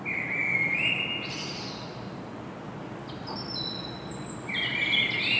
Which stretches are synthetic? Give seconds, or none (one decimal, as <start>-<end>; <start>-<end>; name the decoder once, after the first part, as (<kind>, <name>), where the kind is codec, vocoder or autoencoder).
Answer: none